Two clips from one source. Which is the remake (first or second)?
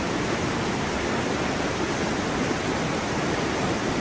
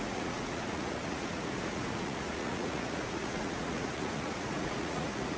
second